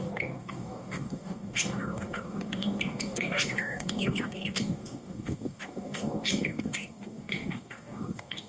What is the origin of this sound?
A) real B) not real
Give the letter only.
B